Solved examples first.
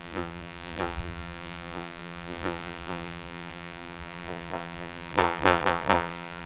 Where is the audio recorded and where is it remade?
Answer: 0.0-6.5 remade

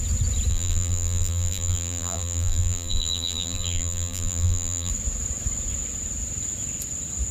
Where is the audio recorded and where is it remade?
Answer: 0.0-0.5 recorded; 0.5-4.9 remade; 4.9-7.3 recorded

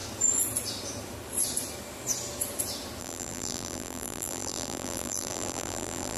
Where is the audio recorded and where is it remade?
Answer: 0.0-3.0 recorded; 3.0-6.2 remade

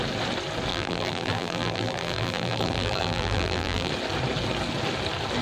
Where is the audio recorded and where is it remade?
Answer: 0.0-0.7 recorded; 0.7-3.9 remade; 3.9-5.4 recorded

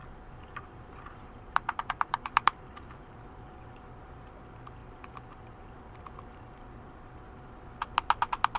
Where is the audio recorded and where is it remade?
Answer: 0.0-4.3 remade; 4.3-4.8 recorded; 4.8-5.8 remade; 5.8-8.6 recorded

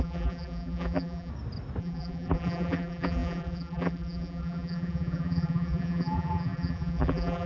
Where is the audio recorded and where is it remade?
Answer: 0.0-1.3 remade; 1.3-1.8 recorded; 1.8-7.5 remade

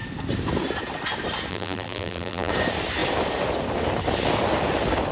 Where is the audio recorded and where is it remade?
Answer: 0.0-1.5 recorded; 1.5-2.5 remade; 2.5-5.1 recorded

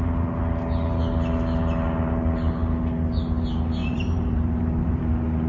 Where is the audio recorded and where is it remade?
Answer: 0.0-3.8 recorded; 3.8-5.0 remade; 5.0-5.5 recorded